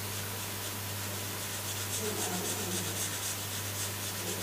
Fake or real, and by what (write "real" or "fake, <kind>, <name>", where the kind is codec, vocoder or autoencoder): real